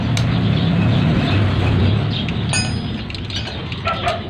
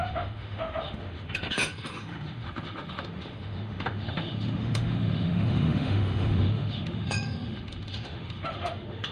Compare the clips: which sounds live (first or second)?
first